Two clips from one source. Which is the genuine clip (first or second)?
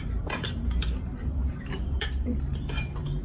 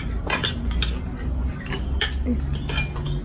second